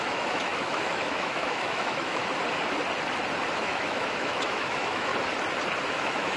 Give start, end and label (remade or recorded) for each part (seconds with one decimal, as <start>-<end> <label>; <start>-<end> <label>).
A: 0.0-2.2 remade; 2.2-3.5 recorded; 3.5-5.1 remade; 5.1-5.9 recorded; 5.9-6.4 remade